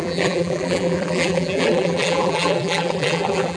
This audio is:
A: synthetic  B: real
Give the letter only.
A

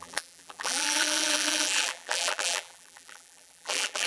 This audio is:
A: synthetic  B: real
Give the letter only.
A